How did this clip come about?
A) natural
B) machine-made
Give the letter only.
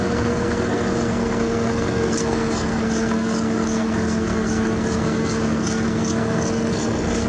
B